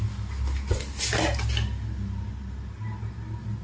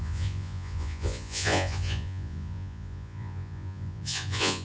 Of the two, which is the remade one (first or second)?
second